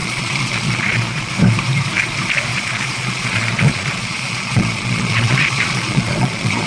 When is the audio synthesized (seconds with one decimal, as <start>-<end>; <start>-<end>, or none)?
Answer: 0.0-1.3; 2.5-6.7

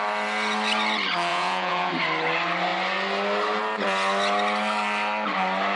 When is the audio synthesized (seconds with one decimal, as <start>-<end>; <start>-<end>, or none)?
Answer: 1.3-1.9

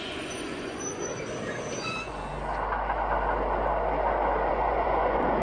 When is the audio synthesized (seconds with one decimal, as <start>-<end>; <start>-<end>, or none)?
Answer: 0.0-1.1; 1.8-2.3; 4.5-5.4

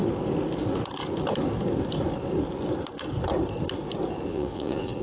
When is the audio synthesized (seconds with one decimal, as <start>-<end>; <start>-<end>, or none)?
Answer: 4.3-5.0